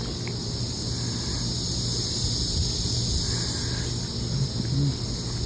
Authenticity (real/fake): real